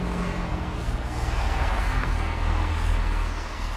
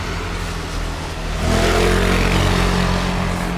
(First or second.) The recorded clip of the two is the second